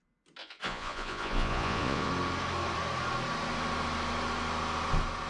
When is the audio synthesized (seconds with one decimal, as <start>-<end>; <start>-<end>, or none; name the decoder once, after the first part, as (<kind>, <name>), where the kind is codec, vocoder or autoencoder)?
0.4-2.1 (vocoder, Vocos)